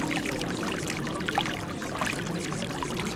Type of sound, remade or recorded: recorded